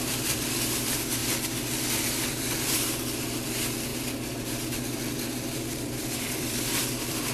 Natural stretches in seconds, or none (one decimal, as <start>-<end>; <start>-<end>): 1.2-3.2; 3.9-4.4